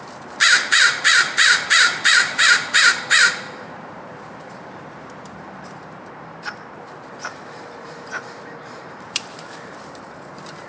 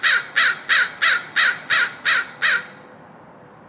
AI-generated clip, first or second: first